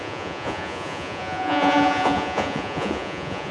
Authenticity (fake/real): fake